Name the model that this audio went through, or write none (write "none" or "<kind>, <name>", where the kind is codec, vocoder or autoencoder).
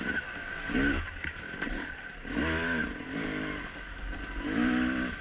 none